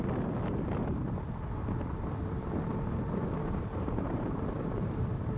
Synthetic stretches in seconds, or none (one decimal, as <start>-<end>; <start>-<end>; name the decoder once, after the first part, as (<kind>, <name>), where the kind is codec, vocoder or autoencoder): 2.2-5.4 (vocoder, BigVGAN v2)